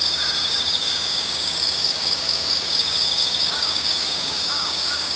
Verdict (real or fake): fake